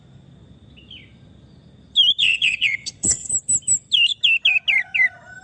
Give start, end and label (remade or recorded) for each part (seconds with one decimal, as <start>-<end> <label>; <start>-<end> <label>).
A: 0.0-2.2 recorded; 2.2-3.3 remade; 3.3-5.4 recorded